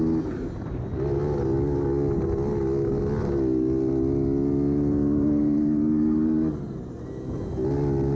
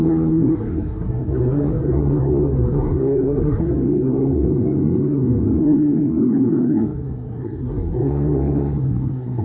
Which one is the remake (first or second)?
second